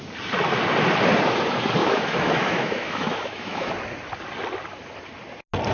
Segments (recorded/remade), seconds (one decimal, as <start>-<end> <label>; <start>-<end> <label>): 0.0-1.8 recorded; 1.8-3.7 remade; 3.7-5.7 recorded